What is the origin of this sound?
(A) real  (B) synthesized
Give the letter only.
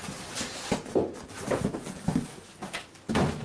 A